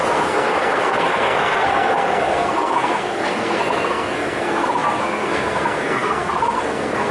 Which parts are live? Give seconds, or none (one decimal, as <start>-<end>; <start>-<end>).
none